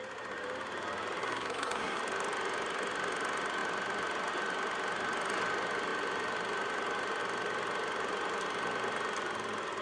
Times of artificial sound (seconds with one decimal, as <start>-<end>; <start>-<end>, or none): 1.2-2.0